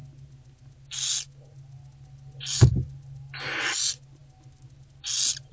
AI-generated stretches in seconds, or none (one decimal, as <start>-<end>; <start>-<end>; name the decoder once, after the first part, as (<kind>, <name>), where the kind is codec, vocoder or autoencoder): none